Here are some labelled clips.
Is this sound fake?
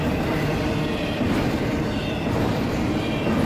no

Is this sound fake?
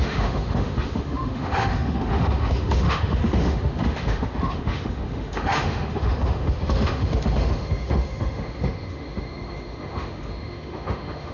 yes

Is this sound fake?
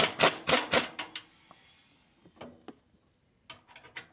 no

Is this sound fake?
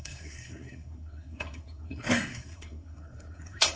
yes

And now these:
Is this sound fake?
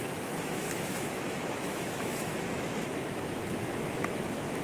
yes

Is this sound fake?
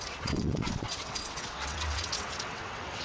yes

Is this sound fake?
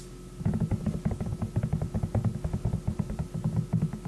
no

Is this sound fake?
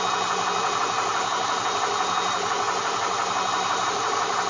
no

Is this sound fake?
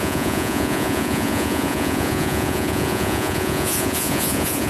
yes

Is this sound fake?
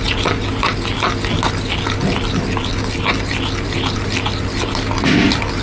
no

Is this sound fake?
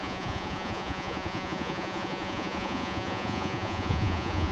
yes